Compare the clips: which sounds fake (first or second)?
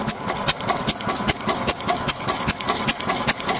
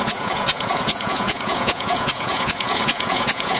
second